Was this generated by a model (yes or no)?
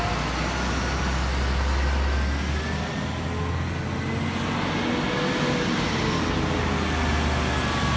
no